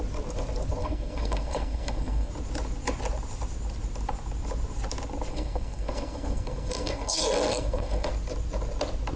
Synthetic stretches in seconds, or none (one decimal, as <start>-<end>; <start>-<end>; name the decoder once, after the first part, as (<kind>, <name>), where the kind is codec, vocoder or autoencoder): 0.8-2.3 (codec, SNAC); 5.3-8.1